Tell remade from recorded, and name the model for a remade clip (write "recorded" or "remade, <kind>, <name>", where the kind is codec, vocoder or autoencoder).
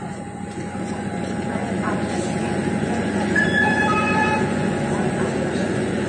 remade, vocoder, Vocos